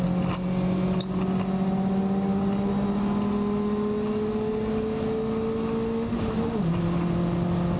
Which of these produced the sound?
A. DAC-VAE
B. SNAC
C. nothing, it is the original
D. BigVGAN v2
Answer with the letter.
C